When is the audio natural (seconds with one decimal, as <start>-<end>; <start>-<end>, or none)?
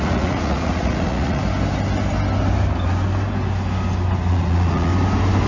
1.4-4.3; 4.9-5.5